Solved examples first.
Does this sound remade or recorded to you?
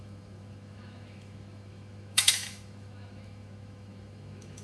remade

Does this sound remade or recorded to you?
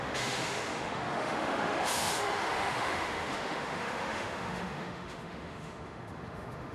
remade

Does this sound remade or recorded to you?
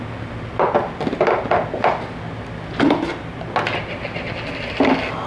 recorded